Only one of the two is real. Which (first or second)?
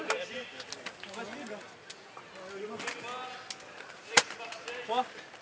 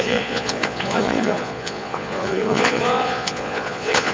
first